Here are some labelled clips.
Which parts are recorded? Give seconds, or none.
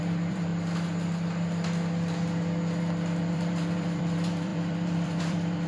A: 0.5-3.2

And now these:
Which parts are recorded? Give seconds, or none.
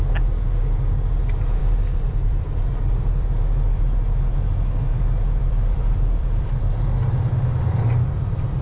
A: 0.0-1.6; 3.4-5.4; 6.6-8.6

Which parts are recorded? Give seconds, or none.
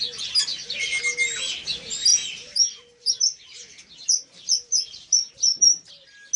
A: 0.0-0.5; 1.0-2.1; 5.9-6.4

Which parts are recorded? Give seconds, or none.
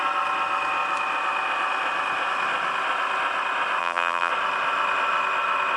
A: 0.0-3.8; 4.3-5.8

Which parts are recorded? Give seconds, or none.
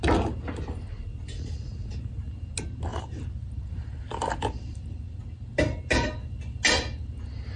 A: 0.0-2.9; 5.2-7.6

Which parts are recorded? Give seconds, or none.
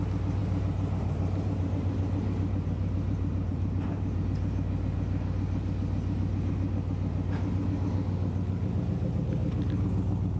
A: 0.0-0.4; 4.2-10.4